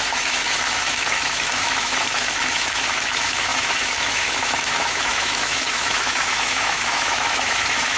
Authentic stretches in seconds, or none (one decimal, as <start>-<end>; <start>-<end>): none